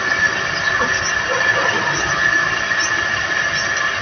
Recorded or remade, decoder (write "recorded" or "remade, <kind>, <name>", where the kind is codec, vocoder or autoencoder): recorded